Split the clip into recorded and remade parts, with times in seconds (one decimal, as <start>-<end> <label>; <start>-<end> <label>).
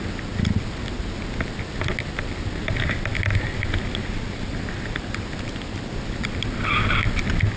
0.0-7.6 recorded